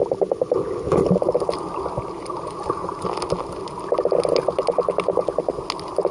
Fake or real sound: real